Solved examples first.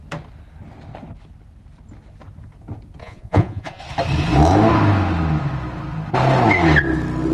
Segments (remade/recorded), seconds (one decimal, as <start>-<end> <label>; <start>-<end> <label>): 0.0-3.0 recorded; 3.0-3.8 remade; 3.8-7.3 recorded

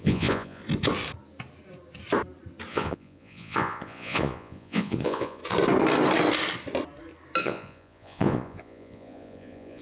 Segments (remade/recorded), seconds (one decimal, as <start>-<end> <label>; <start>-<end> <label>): 0.0-0.6 remade; 0.6-2.7 recorded; 2.7-5.4 remade; 5.4-7.4 recorded; 7.4-9.8 remade

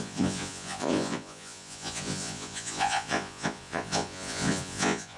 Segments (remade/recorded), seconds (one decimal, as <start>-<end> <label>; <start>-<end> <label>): 0.0-5.2 remade

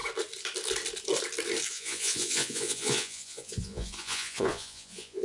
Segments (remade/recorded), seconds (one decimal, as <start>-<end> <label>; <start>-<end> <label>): 0.0-1.7 recorded; 1.7-5.2 remade